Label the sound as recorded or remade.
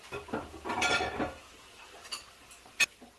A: recorded